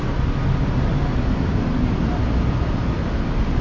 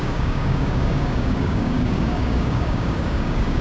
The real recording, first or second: first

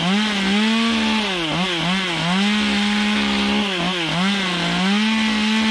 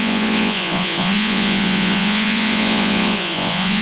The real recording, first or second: first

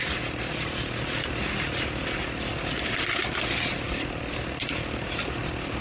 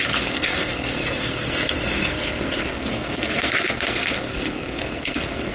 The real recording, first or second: first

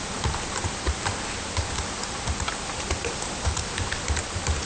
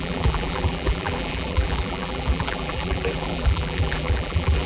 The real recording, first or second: first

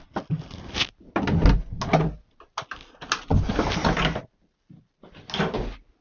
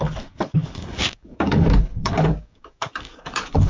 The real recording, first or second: first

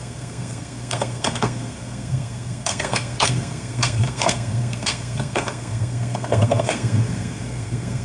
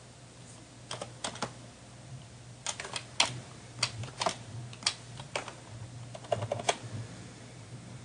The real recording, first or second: second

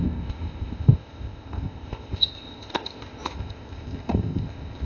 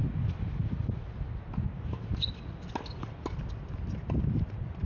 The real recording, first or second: second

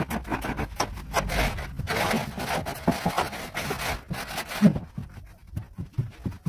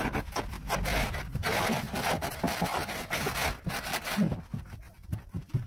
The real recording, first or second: first